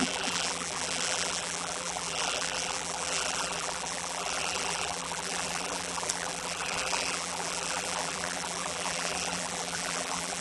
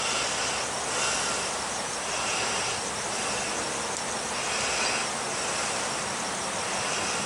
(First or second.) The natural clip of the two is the second